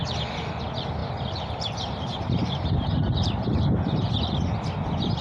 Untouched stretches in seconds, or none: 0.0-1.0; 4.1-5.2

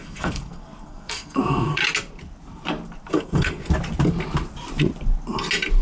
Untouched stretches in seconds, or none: 1.8-3.1; 3.6-5.8

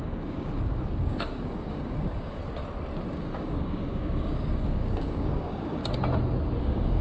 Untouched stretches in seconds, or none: 2.4-3.1; 5.8-6.6

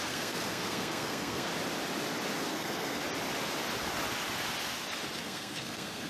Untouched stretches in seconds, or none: 1.5-2.4; 3.0-5.2

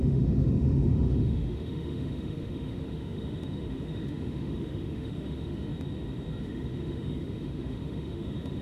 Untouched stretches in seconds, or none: 5.7-6.4

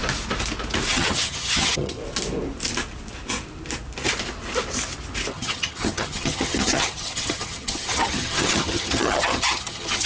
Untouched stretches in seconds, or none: 0.0-0.9; 2.0-5.3

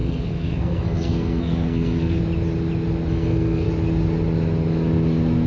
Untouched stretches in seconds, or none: 2.2-3.1; 3.7-5.5